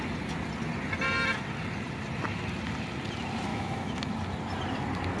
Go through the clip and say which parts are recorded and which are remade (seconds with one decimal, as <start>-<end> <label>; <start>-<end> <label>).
0.0-3.5 recorded; 3.5-4.1 remade; 4.1-5.2 recorded

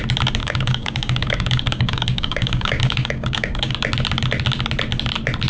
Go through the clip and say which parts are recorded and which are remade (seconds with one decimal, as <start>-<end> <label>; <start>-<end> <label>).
0.0-0.4 recorded; 0.4-3.7 remade; 3.7-5.5 recorded